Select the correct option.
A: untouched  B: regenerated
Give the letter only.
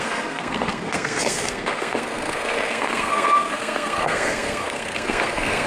B